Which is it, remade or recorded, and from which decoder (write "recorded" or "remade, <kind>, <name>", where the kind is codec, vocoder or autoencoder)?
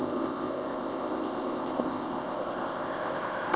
remade, codec, ZipCodec